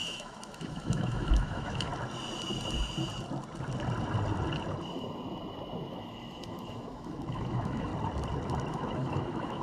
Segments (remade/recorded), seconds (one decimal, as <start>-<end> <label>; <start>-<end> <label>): 0.0-1.9 remade; 1.9-5.9 recorded; 5.9-7.9 remade; 7.9-8.7 recorded; 8.7-9.6 remade